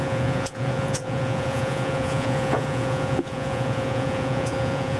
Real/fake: fake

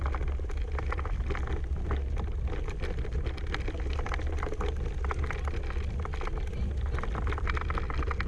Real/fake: real